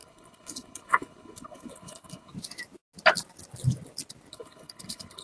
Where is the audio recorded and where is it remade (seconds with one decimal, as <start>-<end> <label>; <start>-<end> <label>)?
0.0-2.3 remade; 2.3-4.3 recorded; 4.3-5.2 remade